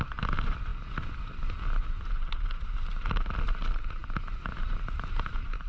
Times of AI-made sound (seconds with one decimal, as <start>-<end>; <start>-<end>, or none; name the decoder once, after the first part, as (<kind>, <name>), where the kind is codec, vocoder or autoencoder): none